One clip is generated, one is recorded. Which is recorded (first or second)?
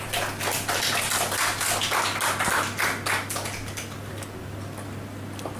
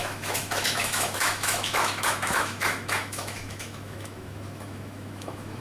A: first